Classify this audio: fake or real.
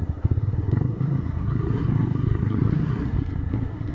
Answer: fake